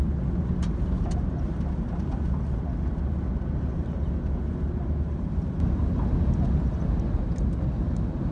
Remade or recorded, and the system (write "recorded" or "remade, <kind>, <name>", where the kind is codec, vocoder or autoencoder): recorded